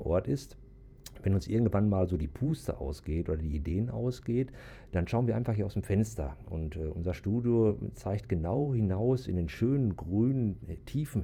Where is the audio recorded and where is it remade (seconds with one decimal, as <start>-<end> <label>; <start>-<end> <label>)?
0.0-0.9 recorded; 0.9-2.5 remade; 2.5-7.7 recorded; 7.7-9.2 remade; 9.2-11.2 recorded